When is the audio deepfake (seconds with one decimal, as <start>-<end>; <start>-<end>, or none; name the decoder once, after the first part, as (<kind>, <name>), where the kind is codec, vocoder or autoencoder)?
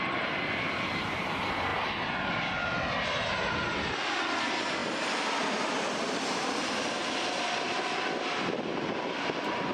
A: none